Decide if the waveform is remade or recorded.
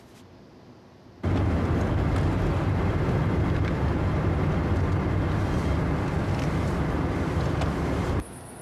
recorded